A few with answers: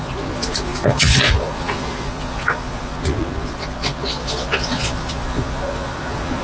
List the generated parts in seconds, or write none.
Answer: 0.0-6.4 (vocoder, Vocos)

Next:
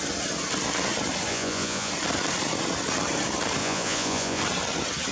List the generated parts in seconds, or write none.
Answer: 1.3-1.9 (vocoder, Vocos); 3.6-4.4

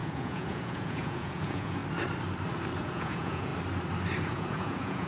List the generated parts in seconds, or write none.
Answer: 0.0-1.8 (vocoder, Vocos); 2.8-3.5; 4.3-5.1

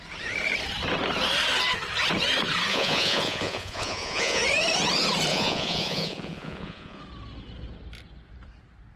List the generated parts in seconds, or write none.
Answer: 2.7-4.4 (vocoder, Vocos); 5.3-7.0

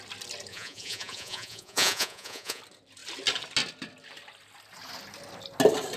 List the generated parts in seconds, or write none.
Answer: 0.5-2.6 (vocoder, Vocos)

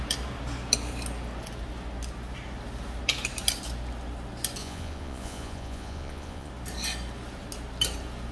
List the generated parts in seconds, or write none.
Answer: 4.6-6.5 (vocoder, Vocos)